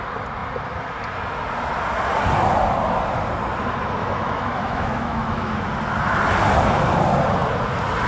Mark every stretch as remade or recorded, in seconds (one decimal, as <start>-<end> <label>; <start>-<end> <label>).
0.0-4.0 recorded; 4.0-5.6 remade; 5.6-8.1 recorded